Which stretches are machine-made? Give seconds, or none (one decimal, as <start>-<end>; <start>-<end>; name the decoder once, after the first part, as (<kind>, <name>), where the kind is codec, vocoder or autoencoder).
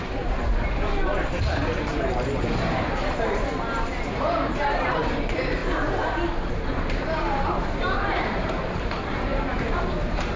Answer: 0.0-5.6 (vocoder, BigVGAN v2); 6.5-10.4